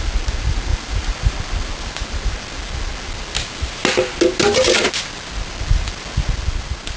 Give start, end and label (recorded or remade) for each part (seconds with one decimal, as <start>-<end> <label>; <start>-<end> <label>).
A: 0.0-0.7 recorded; 0.7-1.4 remade; 1.4-7.0 recorded